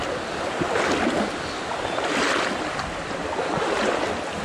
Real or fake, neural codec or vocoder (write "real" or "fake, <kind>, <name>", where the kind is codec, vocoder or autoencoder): real